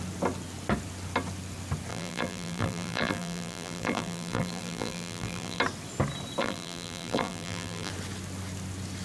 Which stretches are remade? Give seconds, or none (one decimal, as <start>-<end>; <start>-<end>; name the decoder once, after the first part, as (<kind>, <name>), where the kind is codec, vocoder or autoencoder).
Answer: 1.9-5.6 (vocoder, BigVGAN v2); 6.4-7.9